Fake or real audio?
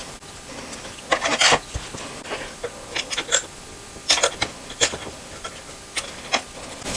real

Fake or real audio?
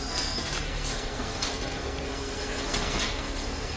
fake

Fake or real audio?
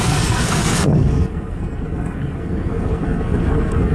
fake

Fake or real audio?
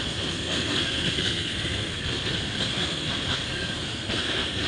fake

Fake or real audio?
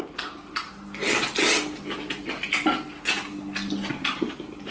real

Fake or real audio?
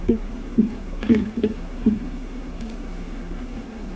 fake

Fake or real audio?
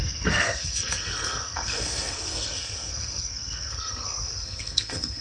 fake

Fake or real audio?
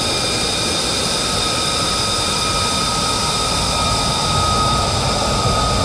real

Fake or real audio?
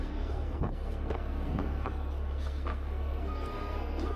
fake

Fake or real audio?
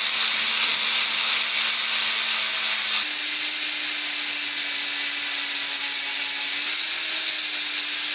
real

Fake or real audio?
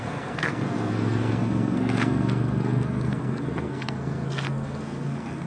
fake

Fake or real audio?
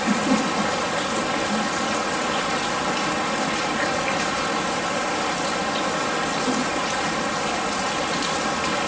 real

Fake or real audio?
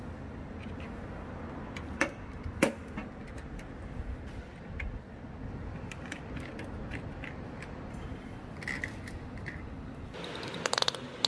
real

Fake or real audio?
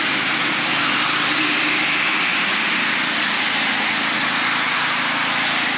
real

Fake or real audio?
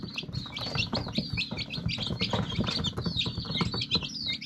real